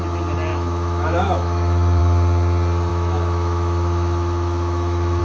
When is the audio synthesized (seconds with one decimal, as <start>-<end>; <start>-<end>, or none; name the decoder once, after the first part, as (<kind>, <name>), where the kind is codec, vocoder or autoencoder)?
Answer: 0.5-2.0 (autoencoder, DAC-VAE); 2.9-5.2